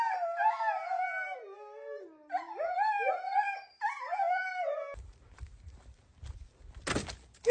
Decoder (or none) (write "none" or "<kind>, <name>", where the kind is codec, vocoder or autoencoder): none